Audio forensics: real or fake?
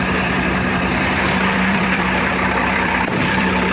fake